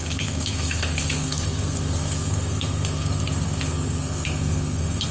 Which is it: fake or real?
fake